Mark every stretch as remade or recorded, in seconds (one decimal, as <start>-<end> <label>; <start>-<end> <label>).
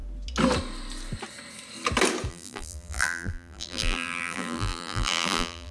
0.0-2.3 recorded; 2.3-5.7 remade